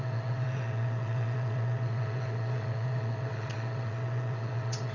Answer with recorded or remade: remade